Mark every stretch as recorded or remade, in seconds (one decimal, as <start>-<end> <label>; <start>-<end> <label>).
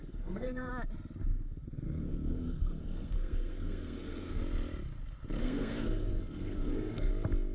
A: 0.0-0.7 remade; 0.7-1.3 recorded; 1.3-4.4 remade; 4.4-5.4 recorded; 5.4-7.1 remade; 7.1-7.5 recorded